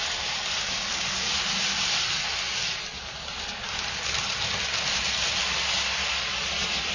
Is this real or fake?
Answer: real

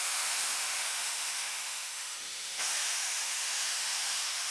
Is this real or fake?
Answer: fake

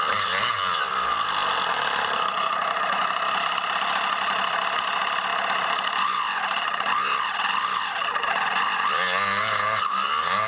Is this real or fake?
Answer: real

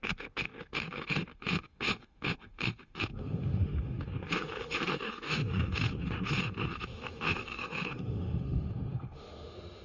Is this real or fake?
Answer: fake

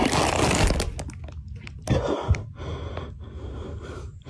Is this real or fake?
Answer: real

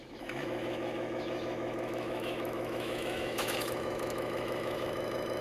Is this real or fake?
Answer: fake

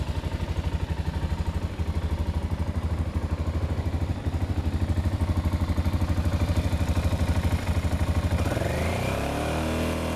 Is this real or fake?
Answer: real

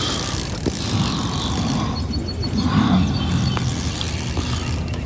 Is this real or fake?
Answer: real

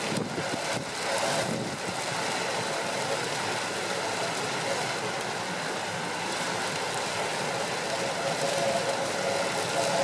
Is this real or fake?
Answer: real